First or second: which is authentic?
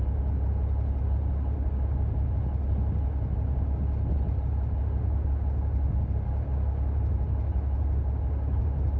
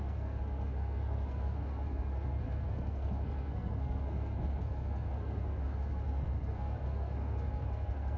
first